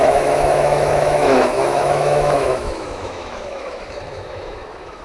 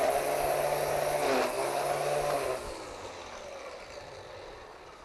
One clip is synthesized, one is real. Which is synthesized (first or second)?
first